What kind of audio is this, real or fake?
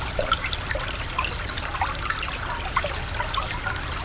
real